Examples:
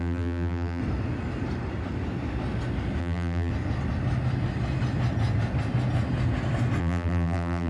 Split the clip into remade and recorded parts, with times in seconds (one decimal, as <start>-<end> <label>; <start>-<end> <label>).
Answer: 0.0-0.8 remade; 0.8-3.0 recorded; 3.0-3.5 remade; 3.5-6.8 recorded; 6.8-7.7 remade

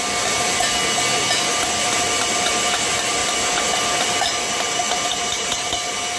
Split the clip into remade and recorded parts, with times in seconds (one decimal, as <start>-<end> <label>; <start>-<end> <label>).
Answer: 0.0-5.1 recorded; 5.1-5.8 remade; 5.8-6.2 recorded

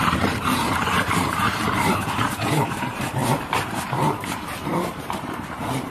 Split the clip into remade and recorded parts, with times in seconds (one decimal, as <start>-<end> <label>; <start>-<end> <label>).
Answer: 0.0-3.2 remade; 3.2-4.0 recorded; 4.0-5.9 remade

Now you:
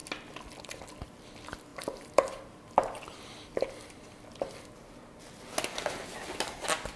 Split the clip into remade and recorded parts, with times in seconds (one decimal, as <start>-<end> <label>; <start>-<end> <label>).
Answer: 0.0-1.7 recorded; 1.7-3.5 remade; 3.5-7.0 recorded